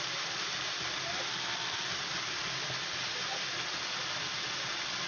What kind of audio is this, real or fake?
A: real